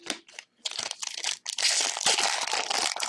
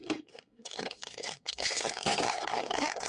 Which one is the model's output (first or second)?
second